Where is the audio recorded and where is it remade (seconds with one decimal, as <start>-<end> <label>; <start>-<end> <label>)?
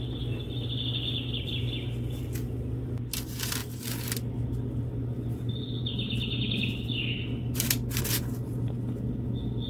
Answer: 0.0-9.7 recorded